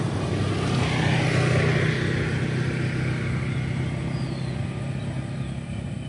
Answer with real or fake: real